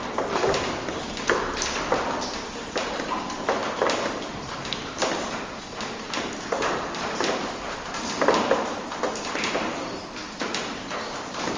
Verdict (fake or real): real